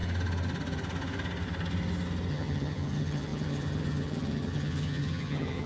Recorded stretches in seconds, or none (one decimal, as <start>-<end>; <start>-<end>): 0.0-2.3